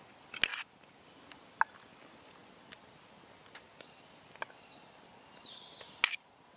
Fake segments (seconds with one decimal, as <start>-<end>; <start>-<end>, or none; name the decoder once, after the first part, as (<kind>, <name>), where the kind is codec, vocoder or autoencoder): none